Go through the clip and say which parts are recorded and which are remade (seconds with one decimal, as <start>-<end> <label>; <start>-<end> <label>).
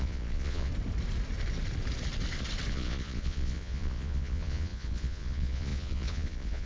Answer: 0.0-0.7 remade; 0.7-2.7 recorded; 2.7-6.7 remade